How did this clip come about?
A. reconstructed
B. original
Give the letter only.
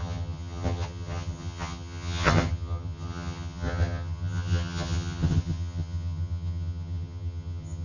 A